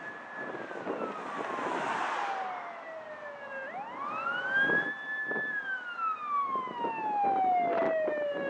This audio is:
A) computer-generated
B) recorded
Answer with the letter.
B